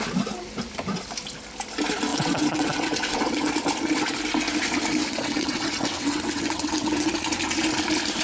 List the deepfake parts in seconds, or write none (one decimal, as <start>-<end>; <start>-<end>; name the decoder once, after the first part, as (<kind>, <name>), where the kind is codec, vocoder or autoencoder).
2.1-3.5 (vocoder, WaveNeXt); 5.0-7.1